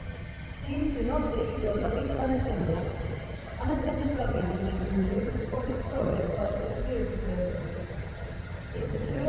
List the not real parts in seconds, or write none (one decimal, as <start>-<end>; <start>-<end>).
0.0-0.8; 1.3-6.8; 7.5-9.3